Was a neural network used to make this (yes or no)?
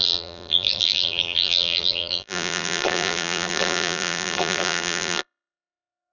yes